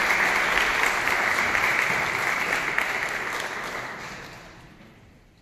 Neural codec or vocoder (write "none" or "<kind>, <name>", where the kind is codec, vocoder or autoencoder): none